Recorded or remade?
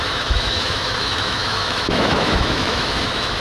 remade